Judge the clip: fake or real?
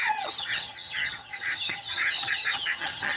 fake